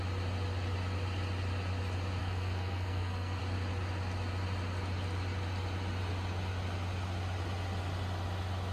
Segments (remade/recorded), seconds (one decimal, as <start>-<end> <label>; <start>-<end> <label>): 0.0-2.2 recorded; 2.2-3.4 remade; 3.4-8.7 recorded